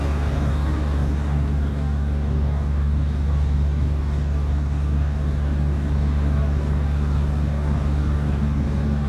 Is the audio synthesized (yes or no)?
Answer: yes